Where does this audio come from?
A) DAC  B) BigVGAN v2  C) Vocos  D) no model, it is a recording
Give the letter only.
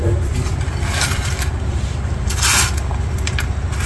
D